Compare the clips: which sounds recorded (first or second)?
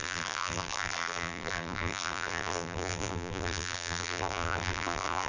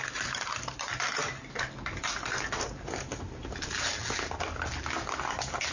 second